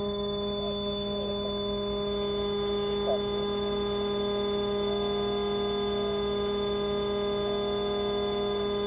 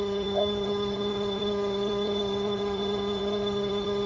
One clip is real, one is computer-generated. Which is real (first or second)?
first